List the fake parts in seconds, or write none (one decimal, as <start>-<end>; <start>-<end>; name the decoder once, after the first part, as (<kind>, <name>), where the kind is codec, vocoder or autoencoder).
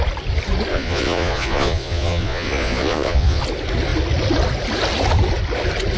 0.7-3.4 (vocoder, Vocos)